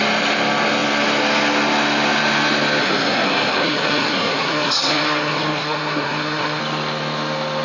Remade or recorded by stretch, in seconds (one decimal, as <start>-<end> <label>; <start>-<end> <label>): 0.0-2.8 recorded; 2.8-6.6 remade; 6.6-7.6 recorded